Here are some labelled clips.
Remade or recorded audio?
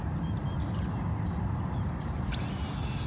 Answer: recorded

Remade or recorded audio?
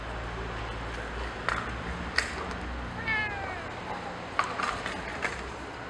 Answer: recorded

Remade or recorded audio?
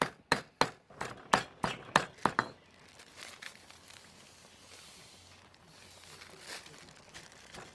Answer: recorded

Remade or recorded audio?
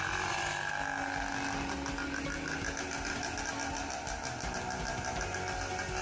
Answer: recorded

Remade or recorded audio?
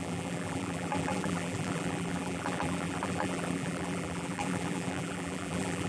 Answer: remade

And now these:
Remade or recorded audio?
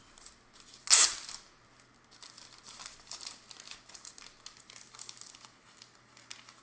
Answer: recorded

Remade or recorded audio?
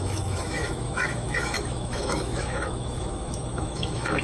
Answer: remade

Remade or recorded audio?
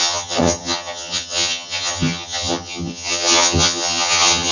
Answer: remade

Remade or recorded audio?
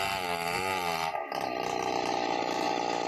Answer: remade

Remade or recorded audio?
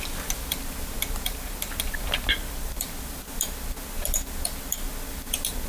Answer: recorded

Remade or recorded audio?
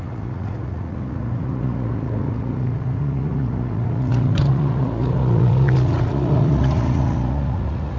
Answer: remade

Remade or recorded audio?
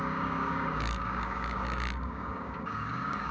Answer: remade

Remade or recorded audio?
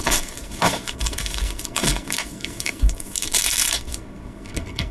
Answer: remade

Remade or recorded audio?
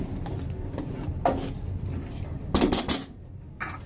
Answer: recorded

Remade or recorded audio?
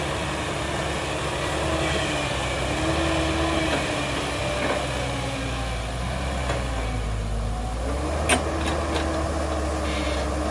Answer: recorded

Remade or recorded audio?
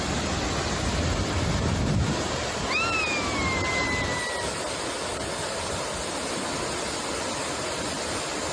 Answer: recorded